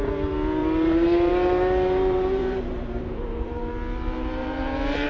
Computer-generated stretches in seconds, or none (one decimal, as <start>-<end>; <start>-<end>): 0.6-3.7; 4.4-5.1